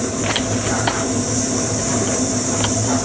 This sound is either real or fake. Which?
fake